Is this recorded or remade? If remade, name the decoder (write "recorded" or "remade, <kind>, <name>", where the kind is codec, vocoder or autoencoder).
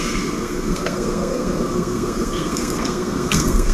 remade, codec, SNAC